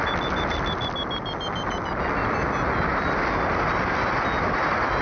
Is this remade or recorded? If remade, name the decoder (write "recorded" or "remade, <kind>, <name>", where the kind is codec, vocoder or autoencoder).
recorded